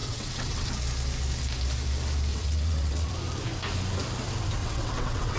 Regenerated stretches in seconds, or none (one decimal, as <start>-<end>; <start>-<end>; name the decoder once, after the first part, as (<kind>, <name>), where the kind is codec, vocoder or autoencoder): 0.0-0.7 (vocoder, WaveNeXt); 2.3-3.1; 4.6-5.4